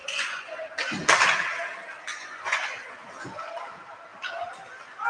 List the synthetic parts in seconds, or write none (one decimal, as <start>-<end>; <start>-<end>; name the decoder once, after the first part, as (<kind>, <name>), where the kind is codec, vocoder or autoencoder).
0.0-0.6 (vocoder, Vocos); 2.1-2.8